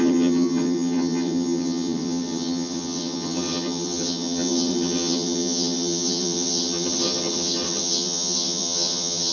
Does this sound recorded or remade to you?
remade